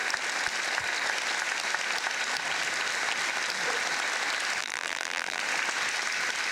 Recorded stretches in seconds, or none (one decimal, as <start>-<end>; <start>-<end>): 0.0-4.6; 5.4-6.5